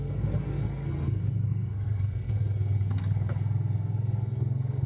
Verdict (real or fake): fake